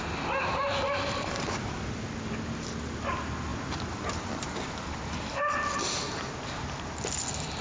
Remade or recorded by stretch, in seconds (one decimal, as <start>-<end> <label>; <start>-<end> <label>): 0.0-0.4 recorded; 0.4-2.0 remade; 2.0-3.5 recorded; 3.5-5.4 remade; 5.4-7.6 recorded